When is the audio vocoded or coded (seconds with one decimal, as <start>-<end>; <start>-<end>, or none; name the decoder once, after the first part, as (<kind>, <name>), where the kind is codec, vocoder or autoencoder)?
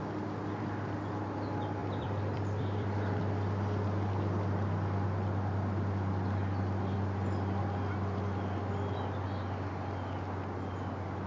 1.8-3.2 (vocoder, BigVGAN v2)